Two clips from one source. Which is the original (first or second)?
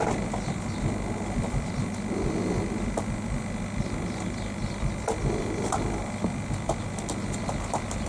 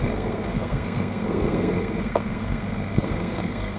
first